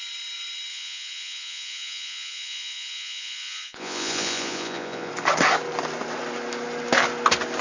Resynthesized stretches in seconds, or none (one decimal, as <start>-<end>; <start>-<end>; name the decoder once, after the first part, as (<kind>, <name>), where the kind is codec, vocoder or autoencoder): 0.7-5.1 (vocoder, Vocos)